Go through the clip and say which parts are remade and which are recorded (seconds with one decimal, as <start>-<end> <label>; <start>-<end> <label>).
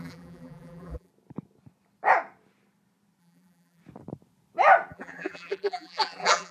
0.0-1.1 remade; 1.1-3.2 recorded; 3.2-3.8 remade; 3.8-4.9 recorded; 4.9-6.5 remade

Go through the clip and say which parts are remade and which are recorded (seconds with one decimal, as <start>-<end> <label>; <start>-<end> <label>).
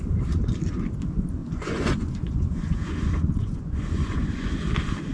0.0-1.4 recorded; 1.4-4.5 remade; 4.5-5.1 recorded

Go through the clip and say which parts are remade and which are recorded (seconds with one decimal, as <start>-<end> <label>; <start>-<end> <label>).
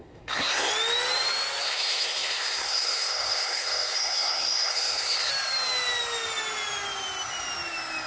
0.0-0.7 remade; 0.7-1.6 recorded; 1.6-5.3 remade; 5.3-8.1 recorded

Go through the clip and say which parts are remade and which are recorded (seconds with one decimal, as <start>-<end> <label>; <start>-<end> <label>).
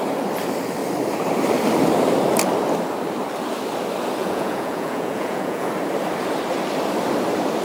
0.0-4.2 recorded; 4.2-5.7 remade; 5.7-7.6 recorded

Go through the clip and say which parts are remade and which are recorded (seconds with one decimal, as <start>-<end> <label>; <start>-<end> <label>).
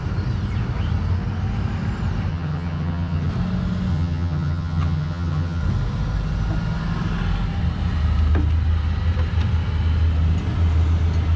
0.0-2.3 recorded; 2.3-3.3 remade; 3.3-3.9 recorded; 3.9-5.6 remade; 5.6-11.4 recorded